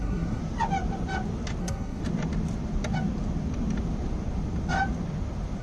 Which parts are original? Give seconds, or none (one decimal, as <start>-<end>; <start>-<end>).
0.4-1.6; 2.0-5.6